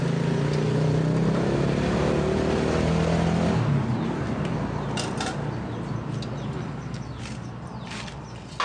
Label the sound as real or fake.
real